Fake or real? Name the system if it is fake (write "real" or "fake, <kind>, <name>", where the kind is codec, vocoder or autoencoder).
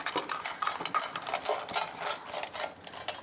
real